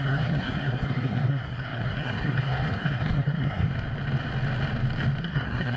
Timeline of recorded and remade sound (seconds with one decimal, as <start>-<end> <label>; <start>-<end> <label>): 0.0-3.7 remade; 3.7-5.2 recorded; 5.2-5.8 remade